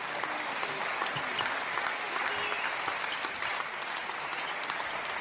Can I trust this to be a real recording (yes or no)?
yes